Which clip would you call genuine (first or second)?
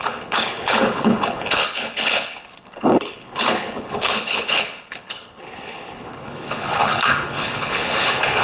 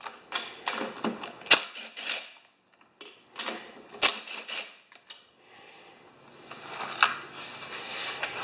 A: second